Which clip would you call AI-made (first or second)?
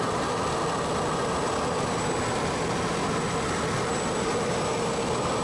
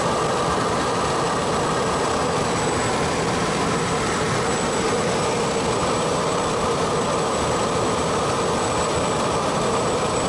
second